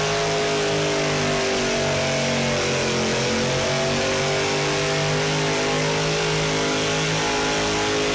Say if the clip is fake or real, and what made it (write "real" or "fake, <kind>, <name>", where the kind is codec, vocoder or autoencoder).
real